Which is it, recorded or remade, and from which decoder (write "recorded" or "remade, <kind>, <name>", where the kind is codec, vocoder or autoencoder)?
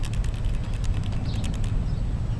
recorded